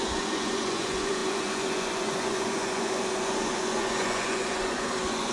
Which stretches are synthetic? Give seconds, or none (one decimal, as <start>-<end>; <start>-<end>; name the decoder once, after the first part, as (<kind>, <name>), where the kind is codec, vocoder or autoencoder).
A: 0.0-5.3 (vocoder, Vocos)